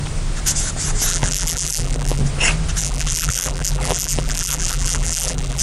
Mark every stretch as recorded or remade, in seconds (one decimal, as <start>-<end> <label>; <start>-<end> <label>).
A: 0.0-1.1 recorded; 1.1-2.2 remade; 2.2-2.8 recorded; 2.8-5.6 remade